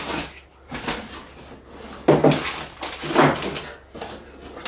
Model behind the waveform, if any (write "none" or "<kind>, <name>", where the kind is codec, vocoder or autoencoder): none